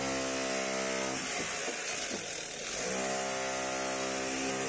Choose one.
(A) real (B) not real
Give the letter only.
A